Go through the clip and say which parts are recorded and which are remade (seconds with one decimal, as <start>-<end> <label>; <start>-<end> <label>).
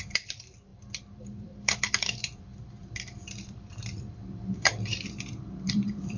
0.0-0.7 remade; 0.7-1.2 recorded; 1.2-6.2 remade